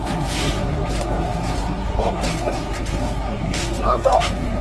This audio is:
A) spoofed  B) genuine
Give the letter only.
A